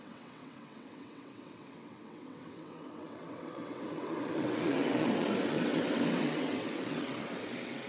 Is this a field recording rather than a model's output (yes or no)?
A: no